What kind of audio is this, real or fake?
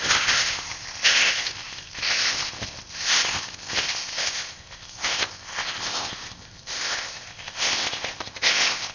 fake